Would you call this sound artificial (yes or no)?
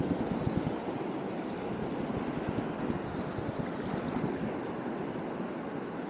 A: no